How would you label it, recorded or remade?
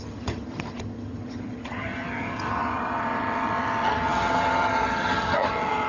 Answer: remade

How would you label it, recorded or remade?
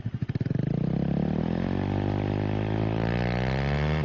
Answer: recorded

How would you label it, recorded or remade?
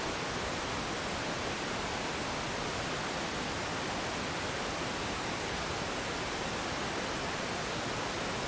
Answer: recorded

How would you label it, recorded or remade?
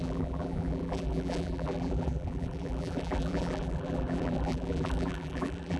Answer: remade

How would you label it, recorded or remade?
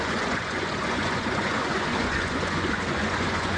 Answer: remade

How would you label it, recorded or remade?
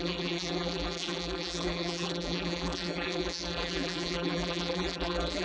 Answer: remade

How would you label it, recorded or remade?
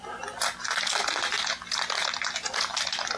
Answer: recorded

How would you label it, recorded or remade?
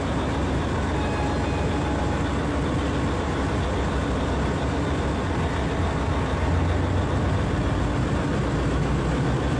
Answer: recorded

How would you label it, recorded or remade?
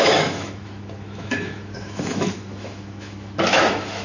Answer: remade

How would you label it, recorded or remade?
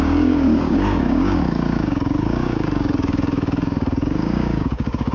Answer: remade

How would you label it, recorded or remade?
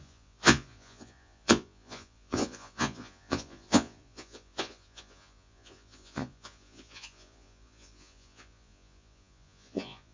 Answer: remade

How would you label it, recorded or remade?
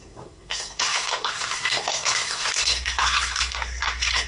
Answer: remade